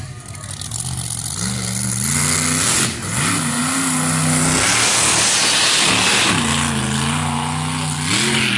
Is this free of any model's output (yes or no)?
yes